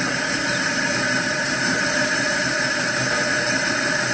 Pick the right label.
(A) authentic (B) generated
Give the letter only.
B